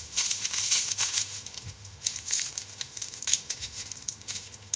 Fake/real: fake